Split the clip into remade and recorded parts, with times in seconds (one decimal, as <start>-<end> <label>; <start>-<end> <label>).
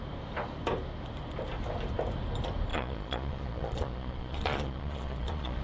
0.0-2.7 recorded; 2.7-5.6 remade